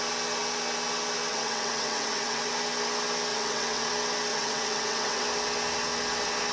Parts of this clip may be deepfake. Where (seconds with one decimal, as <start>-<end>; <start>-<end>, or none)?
1.3-2.5; 3.3-3.9; 4.3-5.2